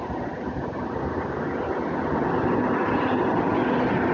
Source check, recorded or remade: recorded